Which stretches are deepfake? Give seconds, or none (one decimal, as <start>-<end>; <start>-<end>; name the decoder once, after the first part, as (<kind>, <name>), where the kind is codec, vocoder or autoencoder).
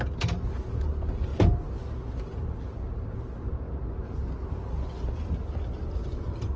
none